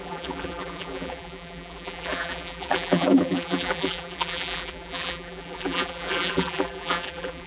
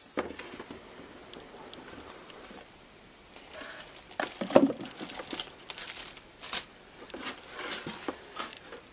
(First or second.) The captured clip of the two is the second